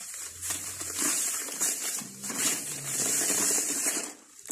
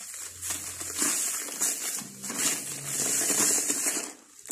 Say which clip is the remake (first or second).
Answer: first